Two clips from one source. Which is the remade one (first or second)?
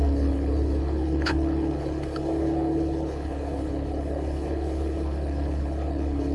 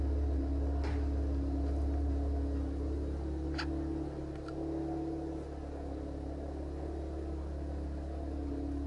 first